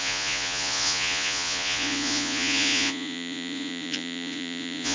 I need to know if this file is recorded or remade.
remade